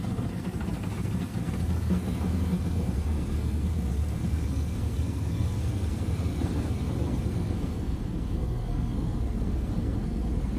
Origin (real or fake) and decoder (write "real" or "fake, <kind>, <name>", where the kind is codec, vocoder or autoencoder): fake, codec, SNAC